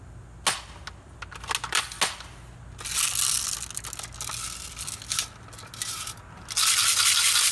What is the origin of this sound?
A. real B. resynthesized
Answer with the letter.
A